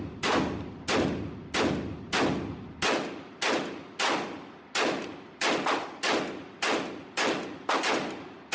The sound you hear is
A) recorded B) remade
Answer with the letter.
A